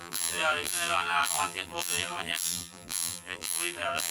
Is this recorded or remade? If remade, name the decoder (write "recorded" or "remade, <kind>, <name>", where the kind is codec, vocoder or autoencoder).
remade, vocoder, BigVGAN v2